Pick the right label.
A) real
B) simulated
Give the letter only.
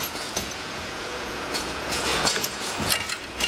B